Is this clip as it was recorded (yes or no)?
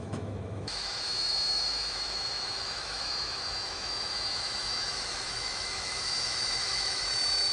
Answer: no